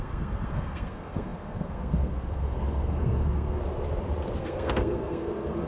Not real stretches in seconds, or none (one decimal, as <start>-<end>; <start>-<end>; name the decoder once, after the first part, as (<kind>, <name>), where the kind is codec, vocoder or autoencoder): 0.0-3.6 (codec, SNAC); 4.4-5.7